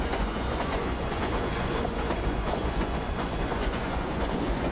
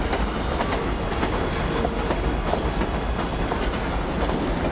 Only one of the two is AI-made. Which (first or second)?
first